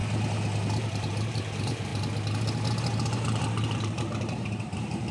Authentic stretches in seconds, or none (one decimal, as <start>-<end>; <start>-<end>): 0.0-0.8; 1.9-3.8